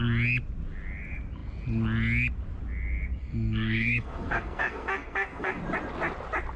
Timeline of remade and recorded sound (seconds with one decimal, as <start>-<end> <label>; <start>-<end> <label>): 0.0-3.2 recorded; 3.2-5.6 remade; 5.6-6.6 recorded